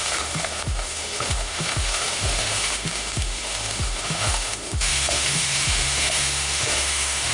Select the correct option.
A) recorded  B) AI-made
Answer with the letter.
B